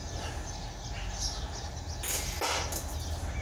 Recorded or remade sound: recorded